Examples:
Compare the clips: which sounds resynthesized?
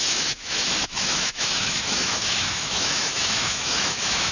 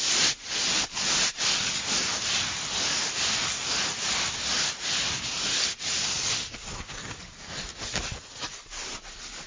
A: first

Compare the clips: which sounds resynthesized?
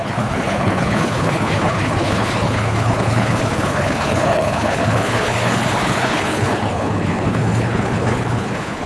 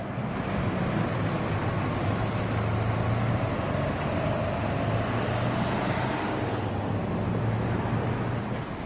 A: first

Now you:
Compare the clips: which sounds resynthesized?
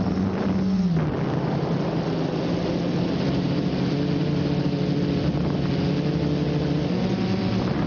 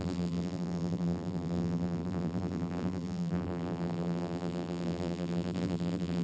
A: second